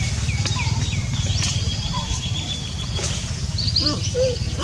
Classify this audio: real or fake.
fake